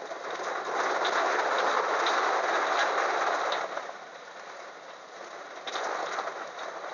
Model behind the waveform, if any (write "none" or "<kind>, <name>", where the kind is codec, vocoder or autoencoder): none